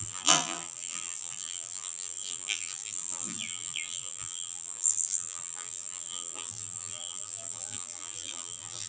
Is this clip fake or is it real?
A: fake